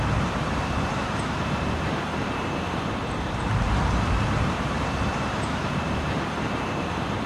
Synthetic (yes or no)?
yes